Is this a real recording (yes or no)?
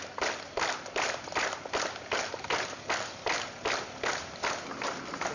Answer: yes